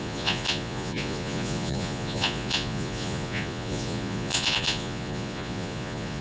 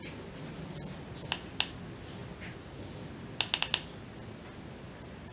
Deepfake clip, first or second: first